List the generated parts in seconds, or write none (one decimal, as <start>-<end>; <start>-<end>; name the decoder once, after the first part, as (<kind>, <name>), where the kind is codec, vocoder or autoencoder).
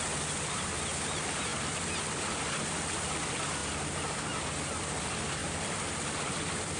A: 1.5-2.6 (vocoder, BigVGAN v2); 5.4-6.8